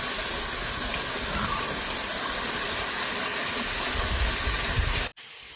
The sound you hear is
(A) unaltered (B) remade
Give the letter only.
A